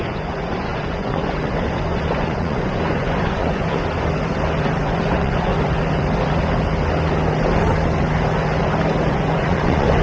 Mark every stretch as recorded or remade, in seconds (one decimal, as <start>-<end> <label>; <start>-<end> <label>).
0.0-3.8 remade; 3.8-4.8 recorded; 4.8-5.5 remade; 5.5-9.1 recorded; 9.1-10.0 remade